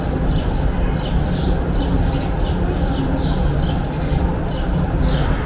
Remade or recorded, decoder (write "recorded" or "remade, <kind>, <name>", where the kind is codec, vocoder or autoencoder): recorded